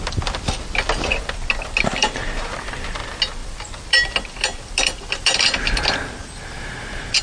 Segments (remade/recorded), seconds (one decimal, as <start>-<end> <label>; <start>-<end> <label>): 0.0-7.2 recorded